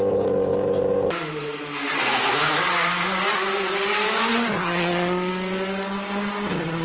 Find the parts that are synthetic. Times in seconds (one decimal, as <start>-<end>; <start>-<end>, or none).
0.5-2.0; 3.4-4.3